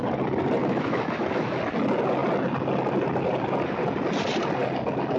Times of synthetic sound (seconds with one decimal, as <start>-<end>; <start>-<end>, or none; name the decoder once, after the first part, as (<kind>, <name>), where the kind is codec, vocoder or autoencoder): 0.6-1.6 (autoencoder, DAC-VAE)